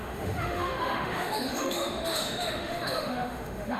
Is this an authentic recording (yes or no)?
no